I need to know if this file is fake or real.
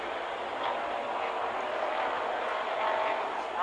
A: real